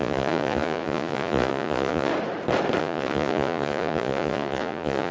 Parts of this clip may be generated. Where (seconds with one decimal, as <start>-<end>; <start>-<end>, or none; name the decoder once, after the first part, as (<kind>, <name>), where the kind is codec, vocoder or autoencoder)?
0.0-2.1 (vocoder, Vocos); 2.8-5.1